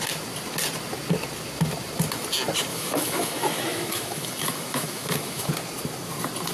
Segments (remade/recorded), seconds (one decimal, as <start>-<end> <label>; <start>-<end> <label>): 0.0-2.7 recorded; 2.7-5.5 remade; 5.5-6.5 recorded